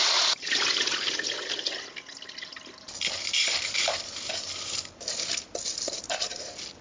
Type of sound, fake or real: real